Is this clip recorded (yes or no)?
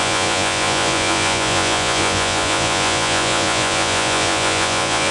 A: no